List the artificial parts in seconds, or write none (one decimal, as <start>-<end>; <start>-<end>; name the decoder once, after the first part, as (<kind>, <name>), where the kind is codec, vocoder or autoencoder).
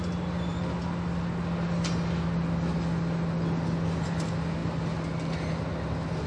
none